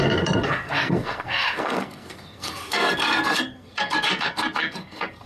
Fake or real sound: fake